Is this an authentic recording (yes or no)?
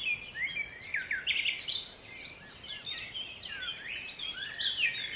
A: yes